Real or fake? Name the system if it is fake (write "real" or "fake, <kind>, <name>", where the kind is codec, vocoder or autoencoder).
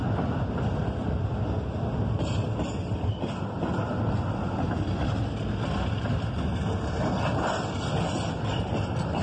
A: real